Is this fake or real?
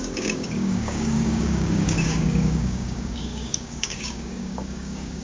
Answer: fake